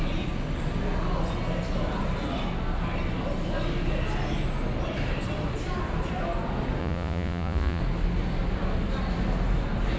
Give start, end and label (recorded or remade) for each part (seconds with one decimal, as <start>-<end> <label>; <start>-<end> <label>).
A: 0.0-6.8 recorded; 6.8-7.8 remade; 7.8-10.0 recorded